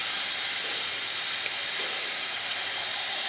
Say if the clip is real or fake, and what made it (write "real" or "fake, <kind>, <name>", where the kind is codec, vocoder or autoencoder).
real